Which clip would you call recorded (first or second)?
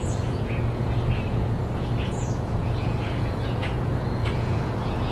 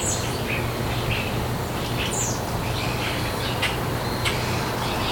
second